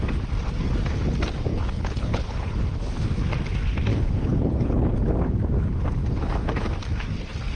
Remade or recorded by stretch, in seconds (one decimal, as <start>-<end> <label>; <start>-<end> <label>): 0.0-1.5 recorded; 1.5-2.8 remade; 2.8-3.9 recorded; 3.9-4.9 remade; 4.9-6.0 recorded; 6.0-6.5 remade; 6.5-7.6 recorded